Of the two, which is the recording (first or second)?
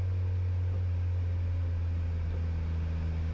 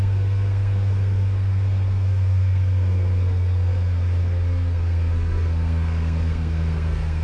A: first